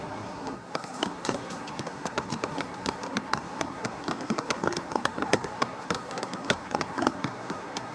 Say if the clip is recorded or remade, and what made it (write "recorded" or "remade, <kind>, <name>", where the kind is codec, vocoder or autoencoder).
remade, codec, SNAC